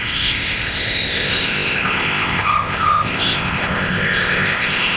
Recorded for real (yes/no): no